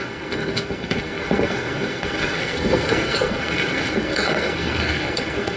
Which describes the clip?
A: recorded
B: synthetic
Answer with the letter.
B